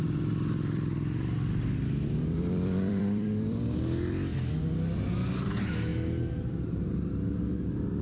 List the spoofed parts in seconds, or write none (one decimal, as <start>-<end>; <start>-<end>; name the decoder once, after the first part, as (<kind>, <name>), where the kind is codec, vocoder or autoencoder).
0.0-4.3 (vocoder, BigVGAN v2); 5.0-5.9; 6.4-8.0